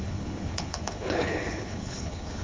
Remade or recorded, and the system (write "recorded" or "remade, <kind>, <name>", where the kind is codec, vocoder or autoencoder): remade, codec, HILCodec